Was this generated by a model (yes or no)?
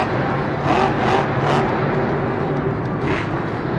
no